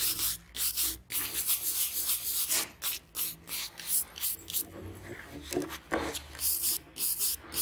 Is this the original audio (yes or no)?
yes